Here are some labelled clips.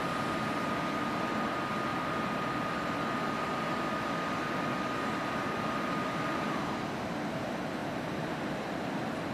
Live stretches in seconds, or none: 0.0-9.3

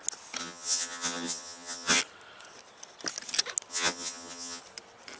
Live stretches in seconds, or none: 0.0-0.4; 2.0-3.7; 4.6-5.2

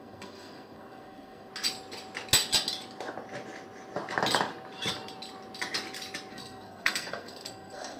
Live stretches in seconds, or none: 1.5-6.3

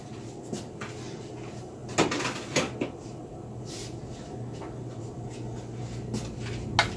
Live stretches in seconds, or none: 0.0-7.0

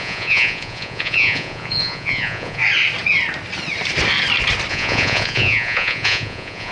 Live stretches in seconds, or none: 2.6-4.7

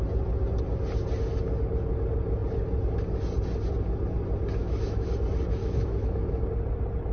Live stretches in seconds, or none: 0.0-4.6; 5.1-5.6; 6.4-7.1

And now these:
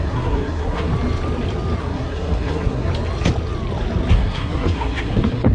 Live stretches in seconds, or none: 0.9-1.8; 2.9-4.1

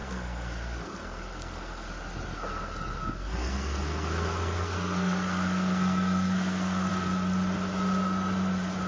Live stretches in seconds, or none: 1.9-2.3; 6.9-8.9